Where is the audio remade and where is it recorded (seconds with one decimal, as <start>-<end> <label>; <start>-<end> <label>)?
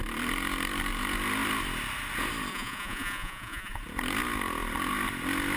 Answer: 0.0-2.5 recorded; 2.5-3.7 remade; 3.7-5.6 recorded